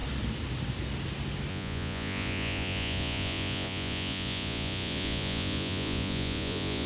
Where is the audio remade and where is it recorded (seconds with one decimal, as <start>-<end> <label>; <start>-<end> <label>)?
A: 0.0-1.5 recorded; 1.5-6.9 remade